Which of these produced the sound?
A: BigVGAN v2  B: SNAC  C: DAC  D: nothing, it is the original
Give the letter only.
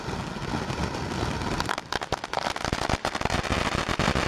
D